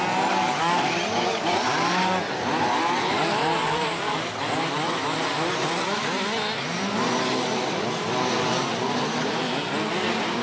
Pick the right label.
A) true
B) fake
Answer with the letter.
A